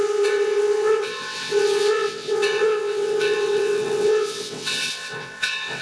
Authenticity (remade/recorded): remade